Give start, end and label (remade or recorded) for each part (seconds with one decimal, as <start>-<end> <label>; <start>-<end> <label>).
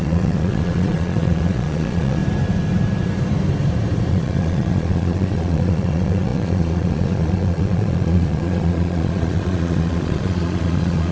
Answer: 0.0-2.2 remade; 2.2-4.1 recorded; 4.1-11.1 remade